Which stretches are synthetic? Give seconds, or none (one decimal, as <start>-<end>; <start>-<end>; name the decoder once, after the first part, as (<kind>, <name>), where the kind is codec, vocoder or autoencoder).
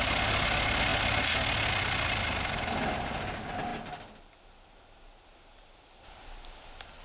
none